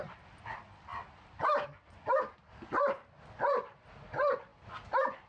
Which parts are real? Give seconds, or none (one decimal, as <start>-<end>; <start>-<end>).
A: 0.0-5.3